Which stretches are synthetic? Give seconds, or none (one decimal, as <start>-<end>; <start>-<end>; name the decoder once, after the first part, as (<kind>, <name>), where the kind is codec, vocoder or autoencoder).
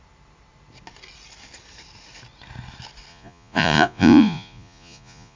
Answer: 3.1-5.4 (vocoder, Vocos)